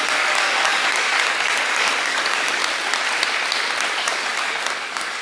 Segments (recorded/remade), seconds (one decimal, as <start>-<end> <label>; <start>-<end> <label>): 0.0-2.6 remade; 2.6-3.9 recorded; 3.9-5.2 remade